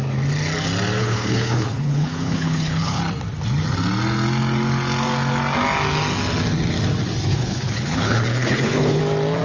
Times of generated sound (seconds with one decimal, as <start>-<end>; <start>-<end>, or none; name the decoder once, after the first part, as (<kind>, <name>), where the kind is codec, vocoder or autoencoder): 1.0-3.0 (codec, HILCodec); 7.3-9.0